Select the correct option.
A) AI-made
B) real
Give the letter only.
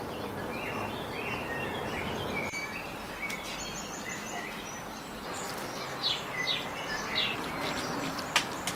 B